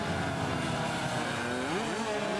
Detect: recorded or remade recorded